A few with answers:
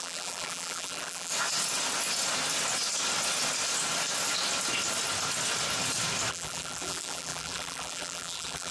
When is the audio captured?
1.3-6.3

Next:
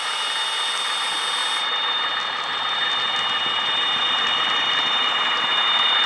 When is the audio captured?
none

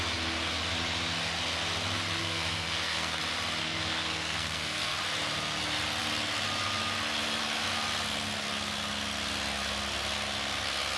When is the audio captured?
0.0-2.2; 3.2-3.6; 5.0-11.0